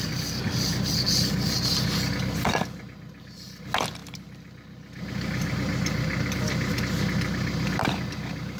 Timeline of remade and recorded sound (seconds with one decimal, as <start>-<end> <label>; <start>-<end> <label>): 0.0-8.6 recorded